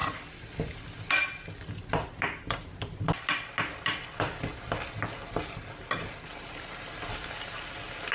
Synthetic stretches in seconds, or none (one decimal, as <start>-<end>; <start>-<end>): none